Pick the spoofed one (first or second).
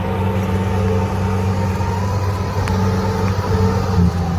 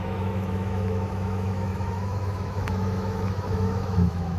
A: second